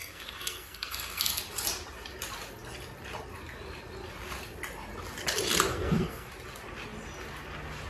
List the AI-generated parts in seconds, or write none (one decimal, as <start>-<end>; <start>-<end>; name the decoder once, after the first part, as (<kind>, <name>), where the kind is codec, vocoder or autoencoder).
0.0-1.4 (codec, SNAC); 5.7-6.3